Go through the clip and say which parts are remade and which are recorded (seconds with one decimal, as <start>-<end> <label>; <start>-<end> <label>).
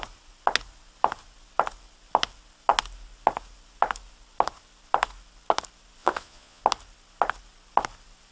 0.0-6.0 recorded; 6.0-6.6 remade; 6.6-8.3 recorded